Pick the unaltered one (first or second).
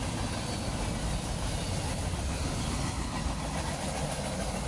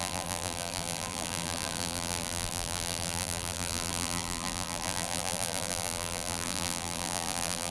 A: first